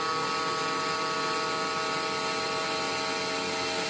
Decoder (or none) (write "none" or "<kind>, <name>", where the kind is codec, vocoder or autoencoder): none